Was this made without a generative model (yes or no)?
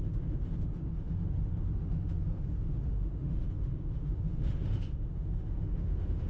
no